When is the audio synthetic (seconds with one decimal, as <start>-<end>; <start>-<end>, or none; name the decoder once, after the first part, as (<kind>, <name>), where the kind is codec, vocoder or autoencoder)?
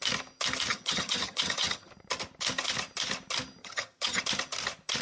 0.7-1.9 (vocoder, HiFi-GAN); 3.6-4.2